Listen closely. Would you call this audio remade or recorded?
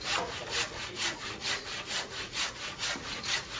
remade